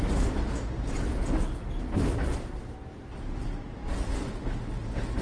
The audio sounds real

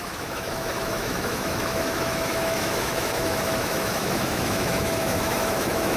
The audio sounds fake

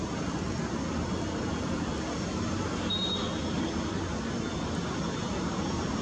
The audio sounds real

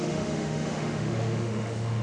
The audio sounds fake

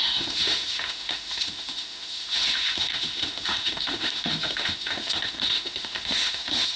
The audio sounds fake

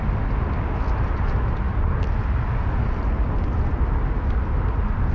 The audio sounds real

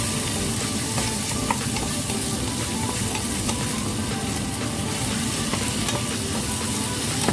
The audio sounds real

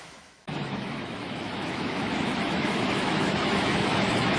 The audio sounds fake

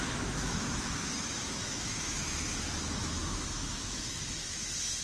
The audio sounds fake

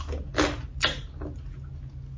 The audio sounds real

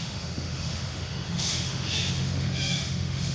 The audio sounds fake